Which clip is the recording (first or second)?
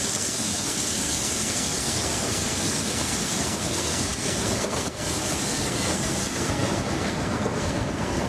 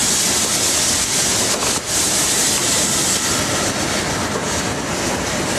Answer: second